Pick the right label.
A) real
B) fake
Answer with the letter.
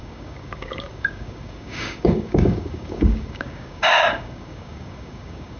B